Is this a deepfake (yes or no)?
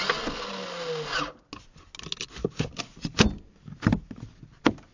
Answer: no